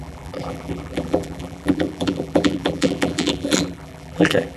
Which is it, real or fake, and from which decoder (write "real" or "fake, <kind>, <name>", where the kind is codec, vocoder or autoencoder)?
fake, vocoder, BigVGAN v2